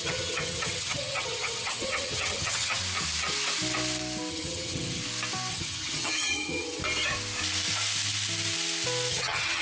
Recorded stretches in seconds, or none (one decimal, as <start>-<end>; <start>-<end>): 2.8-4.3; 5.0-5.5; 6.8-9.1